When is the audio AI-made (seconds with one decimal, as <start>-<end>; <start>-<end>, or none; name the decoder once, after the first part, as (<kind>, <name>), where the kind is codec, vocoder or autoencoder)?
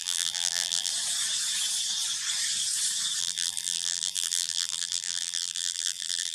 0.0-0.9 (vocoder, BigVGAN v2); 3.2-6.3